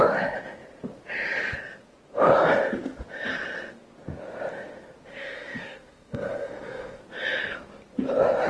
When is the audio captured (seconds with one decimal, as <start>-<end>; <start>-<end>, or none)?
0.0-5.1; 7.0-8.5